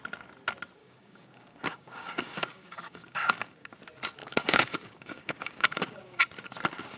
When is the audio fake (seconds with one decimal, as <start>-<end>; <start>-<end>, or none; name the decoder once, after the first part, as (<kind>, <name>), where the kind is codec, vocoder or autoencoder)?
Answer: 0.8-3.7 (codec, DAC); 4.2-6.2